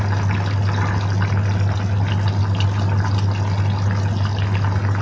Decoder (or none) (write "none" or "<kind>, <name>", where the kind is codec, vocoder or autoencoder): none